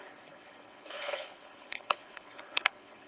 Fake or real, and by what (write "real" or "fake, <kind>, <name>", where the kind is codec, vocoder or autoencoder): fake, codec, HILCodec